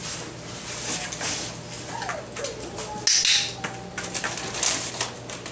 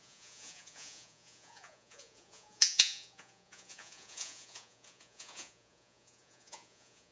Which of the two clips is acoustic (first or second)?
first